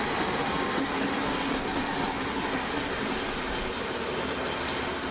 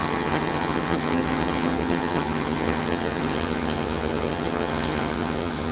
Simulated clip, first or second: second